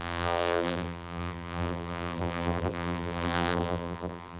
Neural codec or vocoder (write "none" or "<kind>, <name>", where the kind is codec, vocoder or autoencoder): vocoder, BigVGAN v2